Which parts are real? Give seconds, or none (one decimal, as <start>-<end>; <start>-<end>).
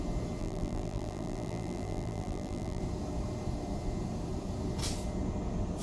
0.0-0.4; 2.8-5.8